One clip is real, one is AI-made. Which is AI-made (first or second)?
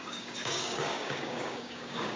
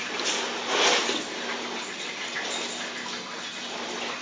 first